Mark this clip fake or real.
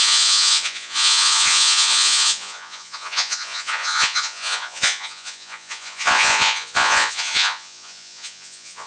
fake